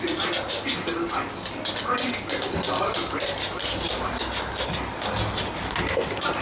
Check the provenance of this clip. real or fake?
real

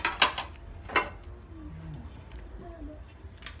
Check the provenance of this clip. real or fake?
real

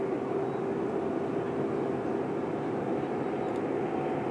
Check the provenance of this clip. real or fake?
real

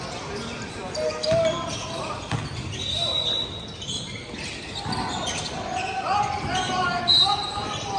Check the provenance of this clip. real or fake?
real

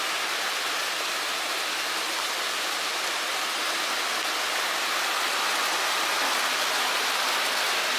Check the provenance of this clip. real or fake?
real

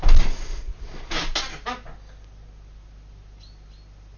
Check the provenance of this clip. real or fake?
real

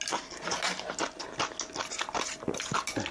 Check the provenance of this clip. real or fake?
real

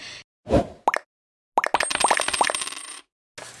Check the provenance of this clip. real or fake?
real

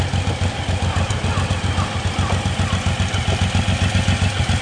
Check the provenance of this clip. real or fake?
real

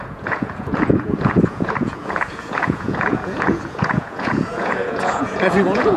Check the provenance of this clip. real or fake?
fake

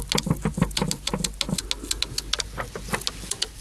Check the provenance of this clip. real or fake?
real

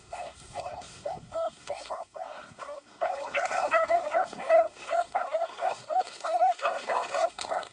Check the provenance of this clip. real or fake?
fake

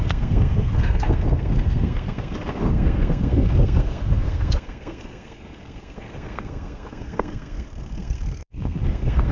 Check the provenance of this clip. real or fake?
fake